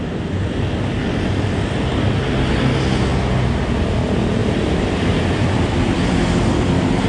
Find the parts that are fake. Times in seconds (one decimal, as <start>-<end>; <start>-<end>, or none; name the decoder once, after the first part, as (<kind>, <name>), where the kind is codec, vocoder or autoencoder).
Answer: 4.4-7.1 (vocoder, BigVGAN v2)